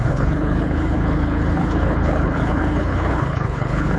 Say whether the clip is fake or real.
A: fake